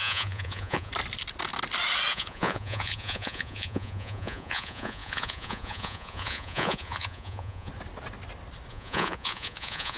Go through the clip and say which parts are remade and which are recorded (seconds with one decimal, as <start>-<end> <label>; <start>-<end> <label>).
0.0-0.9 remade; 0.9-2.1 recorded; 2.1-7.7 remade; 7.7-8.7 recorded; 8.7-10.0 remade